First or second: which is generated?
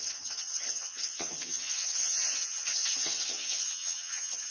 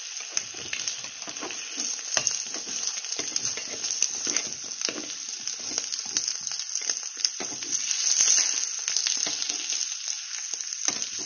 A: first